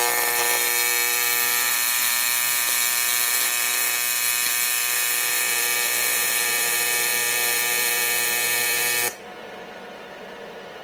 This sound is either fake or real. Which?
fake